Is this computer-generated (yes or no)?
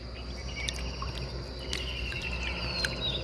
no